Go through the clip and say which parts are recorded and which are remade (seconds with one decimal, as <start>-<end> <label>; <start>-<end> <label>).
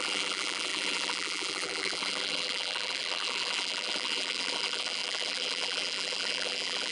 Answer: 0.0-6.9 remade